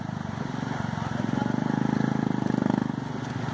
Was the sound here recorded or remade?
recorded